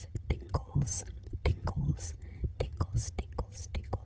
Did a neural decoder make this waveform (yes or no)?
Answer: yes